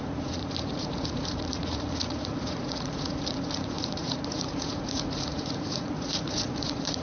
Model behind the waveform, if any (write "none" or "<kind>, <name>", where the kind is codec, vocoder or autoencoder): vocoder, Vocos